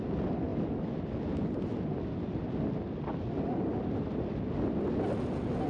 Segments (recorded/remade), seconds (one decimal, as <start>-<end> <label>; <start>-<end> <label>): 0.0-5.7 recorded